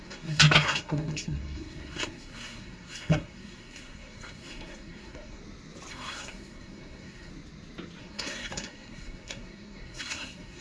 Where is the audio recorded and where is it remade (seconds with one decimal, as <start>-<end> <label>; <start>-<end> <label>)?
0.0-5.4 remade; 5.4-5.9 recorded; 5.9-7.3 remade; 7.3-8.0 recorded; 8.0-10.6 remade